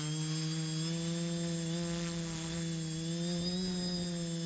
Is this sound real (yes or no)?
yes